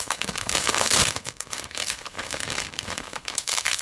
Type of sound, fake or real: fake